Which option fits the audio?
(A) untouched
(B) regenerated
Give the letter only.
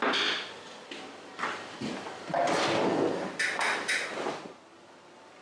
A